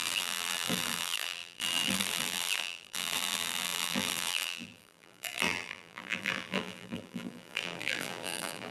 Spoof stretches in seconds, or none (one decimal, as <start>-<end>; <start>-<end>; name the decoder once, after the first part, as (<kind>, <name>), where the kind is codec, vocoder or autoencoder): 0.0-8.7 (vocoder, BigVGAN v2)